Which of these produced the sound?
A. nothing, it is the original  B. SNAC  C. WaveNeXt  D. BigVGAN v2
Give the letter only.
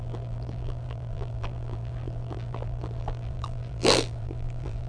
D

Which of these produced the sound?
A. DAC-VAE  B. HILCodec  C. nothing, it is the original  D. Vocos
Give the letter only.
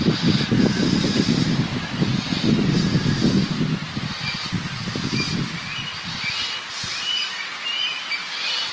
C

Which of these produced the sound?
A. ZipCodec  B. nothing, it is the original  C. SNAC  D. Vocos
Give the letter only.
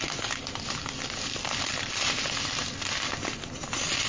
B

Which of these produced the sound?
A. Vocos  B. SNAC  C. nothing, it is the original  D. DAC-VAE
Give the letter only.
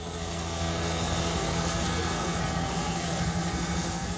B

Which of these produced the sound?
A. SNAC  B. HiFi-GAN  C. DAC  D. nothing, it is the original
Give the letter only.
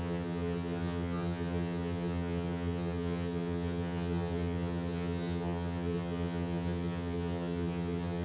B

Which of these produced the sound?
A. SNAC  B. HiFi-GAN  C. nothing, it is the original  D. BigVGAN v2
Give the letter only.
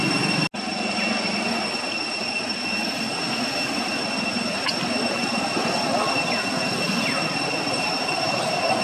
C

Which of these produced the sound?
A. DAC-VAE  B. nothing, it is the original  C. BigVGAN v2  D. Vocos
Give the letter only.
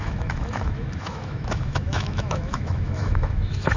A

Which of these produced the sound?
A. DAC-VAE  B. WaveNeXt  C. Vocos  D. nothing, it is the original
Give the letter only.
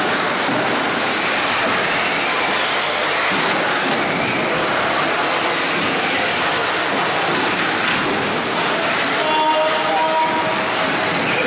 D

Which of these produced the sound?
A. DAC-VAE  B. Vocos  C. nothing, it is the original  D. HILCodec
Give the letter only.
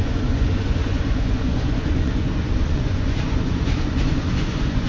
B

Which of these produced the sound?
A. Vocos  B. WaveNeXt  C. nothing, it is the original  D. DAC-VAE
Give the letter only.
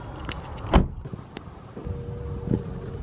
C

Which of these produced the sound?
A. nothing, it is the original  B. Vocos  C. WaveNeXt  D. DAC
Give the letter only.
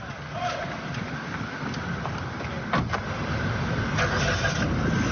A